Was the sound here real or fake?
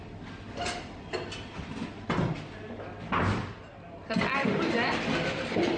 real